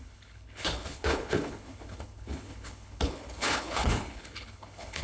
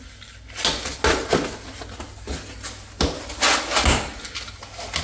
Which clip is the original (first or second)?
second